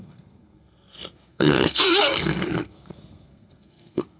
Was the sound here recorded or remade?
remade